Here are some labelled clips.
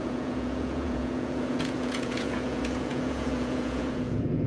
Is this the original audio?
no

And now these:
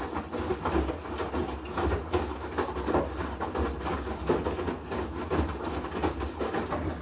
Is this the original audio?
yes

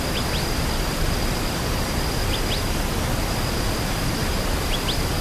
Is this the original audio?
yes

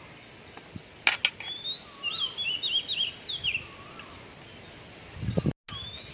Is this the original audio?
yes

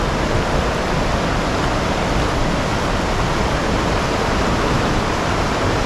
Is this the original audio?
yes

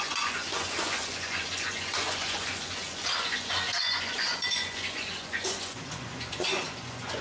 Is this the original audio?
no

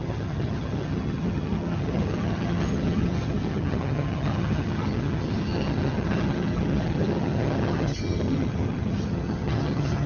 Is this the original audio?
no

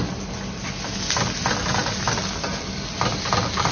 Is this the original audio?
yes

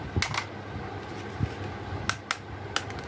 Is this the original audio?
yes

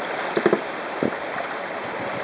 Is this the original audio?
no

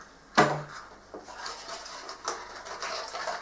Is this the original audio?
yes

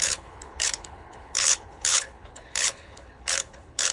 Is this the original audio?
no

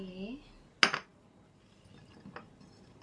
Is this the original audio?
yes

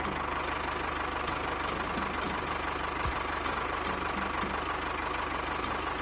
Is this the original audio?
yes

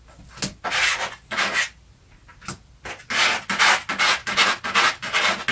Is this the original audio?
yes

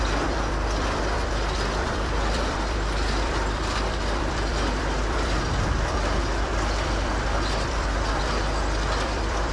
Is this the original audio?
no